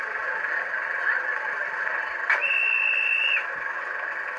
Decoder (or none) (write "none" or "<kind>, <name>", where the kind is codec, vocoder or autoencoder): none